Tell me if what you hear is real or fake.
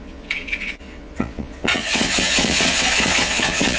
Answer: fake